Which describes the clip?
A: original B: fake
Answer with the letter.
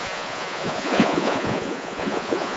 B